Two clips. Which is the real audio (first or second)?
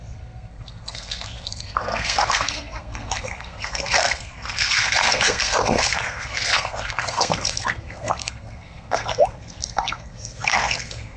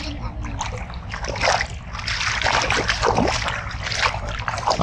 second